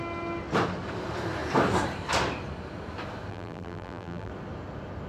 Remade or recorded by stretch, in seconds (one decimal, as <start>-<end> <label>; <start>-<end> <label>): 0.0-3.3 recorded; 3.3-4.3 remade; 4.3-5.1 recorded